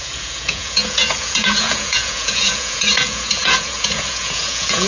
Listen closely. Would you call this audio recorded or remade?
remade